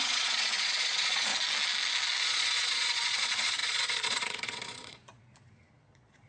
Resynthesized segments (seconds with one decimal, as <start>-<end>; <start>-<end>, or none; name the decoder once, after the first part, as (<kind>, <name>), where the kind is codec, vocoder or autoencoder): 0.0-1.3 (vocoder, Vocos); 2.2-6.3